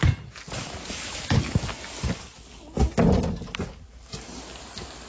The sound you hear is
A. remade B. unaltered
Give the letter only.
B